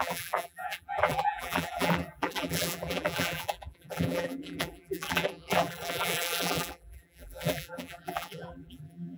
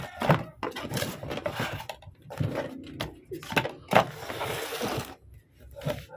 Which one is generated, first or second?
first